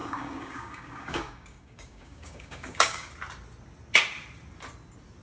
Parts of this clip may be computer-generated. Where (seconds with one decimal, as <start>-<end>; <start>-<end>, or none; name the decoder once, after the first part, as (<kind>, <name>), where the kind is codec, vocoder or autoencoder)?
0.0-3.1 (codec, DAC)